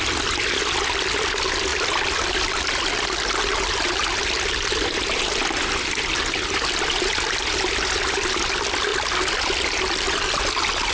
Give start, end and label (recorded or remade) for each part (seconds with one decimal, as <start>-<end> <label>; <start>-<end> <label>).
0.0-10.9 recorded

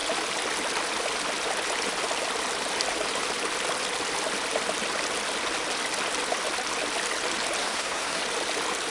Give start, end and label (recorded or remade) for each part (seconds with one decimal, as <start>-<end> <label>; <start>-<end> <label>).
0.0-7.6 recorded; 7.6-8.2 remade; 8.2-8.9 recorded

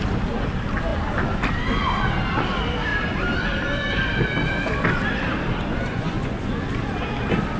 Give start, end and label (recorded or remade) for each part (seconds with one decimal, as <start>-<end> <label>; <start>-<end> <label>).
0.0-5.9 recorded; 5.9-6.5 remade; 6.5-7.6 recorded

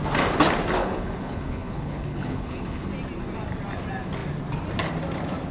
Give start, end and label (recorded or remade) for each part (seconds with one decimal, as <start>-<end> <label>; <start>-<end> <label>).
0.0-0.8 recorded; 0.8-2.9 remade; 2.9-5.5 recorded